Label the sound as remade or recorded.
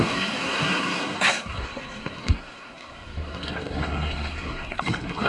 remade